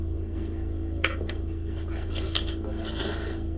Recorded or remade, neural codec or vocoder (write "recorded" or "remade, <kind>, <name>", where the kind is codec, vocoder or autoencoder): remade, codec, SNAC